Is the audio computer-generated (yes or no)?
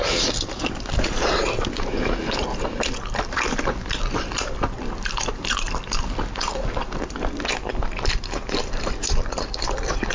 yes